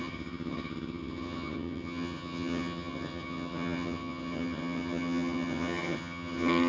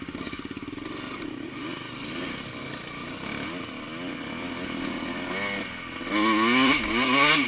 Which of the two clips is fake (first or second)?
first